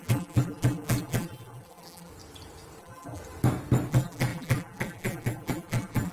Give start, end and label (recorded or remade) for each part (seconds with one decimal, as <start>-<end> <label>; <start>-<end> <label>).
0.0-2.1 remade; 2.1-2.8 recorded; 2.8-3.2 remade; 3.2-3.9 recorded; 3.9-6.1 remade